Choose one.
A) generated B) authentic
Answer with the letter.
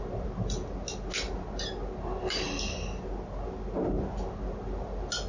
B